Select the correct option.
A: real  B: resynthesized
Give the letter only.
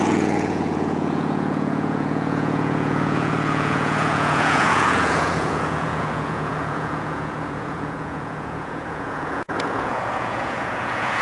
B